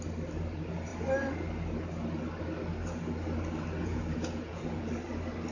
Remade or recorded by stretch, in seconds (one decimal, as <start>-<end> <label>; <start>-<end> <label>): 0.0-3.8 recorded; 3.8-4.9 remade; 4.9-5.5 recorded